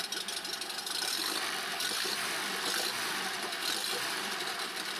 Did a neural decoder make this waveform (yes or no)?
yes